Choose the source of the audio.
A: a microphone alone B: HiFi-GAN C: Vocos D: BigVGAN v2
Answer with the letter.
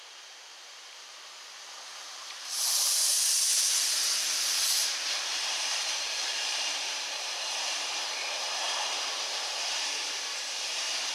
D